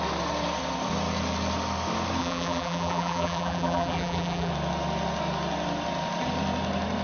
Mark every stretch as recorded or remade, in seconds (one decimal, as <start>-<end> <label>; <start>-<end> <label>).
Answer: 0.0-2.2 recorded; 2.2-4.5 remade; 4.5-7.0 recorded